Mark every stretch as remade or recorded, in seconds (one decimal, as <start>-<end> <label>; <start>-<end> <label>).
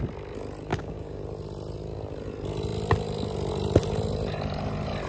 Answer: 0.0-0.7 recorded; 0.7-1.2 remade; 1.2-5.1 recorded